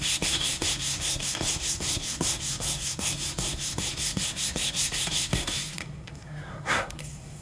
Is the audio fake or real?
fake